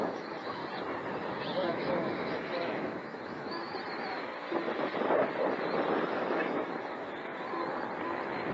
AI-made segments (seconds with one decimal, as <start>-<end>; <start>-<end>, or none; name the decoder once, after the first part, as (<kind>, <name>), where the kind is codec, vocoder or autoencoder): 0.0-0.6 (autoencoder, DAC-VAE); 1.7-3.7; 6.1-7.3